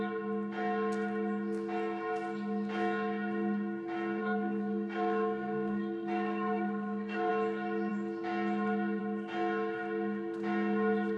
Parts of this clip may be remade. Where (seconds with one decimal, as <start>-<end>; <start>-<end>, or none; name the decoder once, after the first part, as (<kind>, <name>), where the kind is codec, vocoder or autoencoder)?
4.2-7.3 (codec, SNAC)